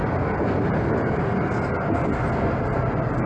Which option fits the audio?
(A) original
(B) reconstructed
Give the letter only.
A